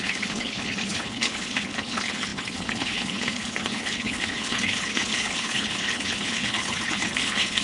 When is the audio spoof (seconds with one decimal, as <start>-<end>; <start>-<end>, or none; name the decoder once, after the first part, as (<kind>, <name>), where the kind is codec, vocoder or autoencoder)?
0.0-7.6 (codec, HILCodec)